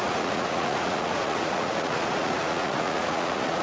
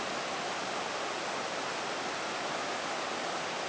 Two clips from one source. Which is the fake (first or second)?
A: first